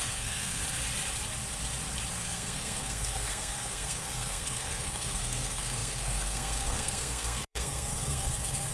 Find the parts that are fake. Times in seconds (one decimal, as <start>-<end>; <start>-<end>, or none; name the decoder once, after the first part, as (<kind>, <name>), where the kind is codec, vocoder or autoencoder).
0.0-0.6 (codec, SNAC); 2.1-8.7